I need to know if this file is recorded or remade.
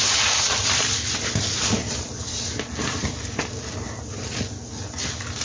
recorded